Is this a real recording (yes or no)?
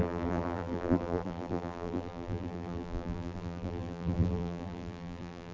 no